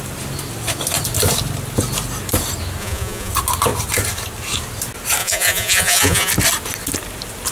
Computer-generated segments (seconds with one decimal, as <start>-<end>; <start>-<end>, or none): 2.8-3.3; 5.2-6.3